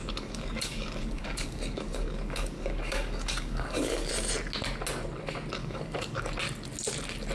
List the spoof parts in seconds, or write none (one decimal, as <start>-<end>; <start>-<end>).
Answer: 0.0-4.1; 5.6-6.3